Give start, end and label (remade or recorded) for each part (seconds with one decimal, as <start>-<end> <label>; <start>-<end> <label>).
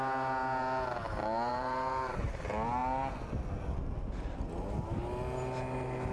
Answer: 0.0-1.5 recorded; 1.5-2.4 remade; 2.4-6.1 recorded